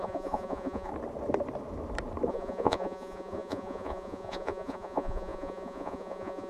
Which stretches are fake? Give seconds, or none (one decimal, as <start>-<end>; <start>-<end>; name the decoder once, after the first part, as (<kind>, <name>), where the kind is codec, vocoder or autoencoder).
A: 0.0-0.9 (vocoder, Vocos); 2.3-6.5